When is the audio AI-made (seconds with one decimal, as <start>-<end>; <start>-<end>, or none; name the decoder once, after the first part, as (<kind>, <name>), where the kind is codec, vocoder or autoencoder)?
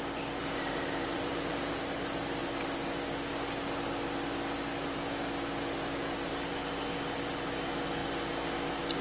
0.4-1.8 (vocoder, BigVGAN v2)